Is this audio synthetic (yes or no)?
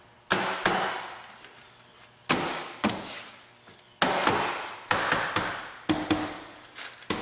no